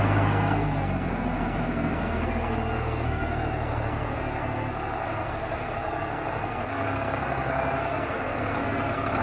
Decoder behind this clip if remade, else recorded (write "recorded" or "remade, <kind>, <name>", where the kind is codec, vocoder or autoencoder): remade, codec, SNAC